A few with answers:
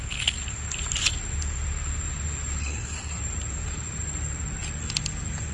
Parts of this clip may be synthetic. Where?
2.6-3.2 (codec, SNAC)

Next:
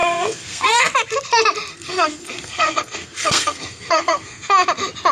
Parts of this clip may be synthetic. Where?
0.0-0.8 (codec, SNAC); 1.7-4.5

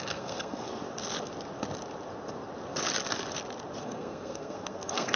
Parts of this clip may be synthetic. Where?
0.0-0.7 (codec, SNAC); 3.8-5.2

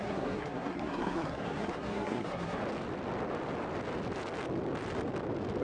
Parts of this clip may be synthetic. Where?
0.0-2.6 (codec, SNAC)

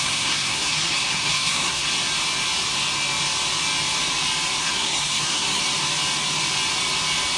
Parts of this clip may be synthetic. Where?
0.0-1.9 (codec, SNAC); 4.6-5.6

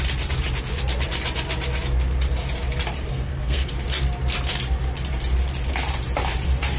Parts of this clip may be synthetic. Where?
3.1-3.7 (codec, SNAC)

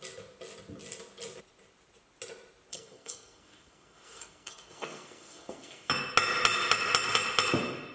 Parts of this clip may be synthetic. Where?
2.7-5.9 (codec, SNAC)

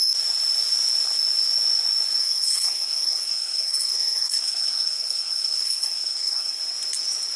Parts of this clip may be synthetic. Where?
2.2-6.6 (codec, SNAC)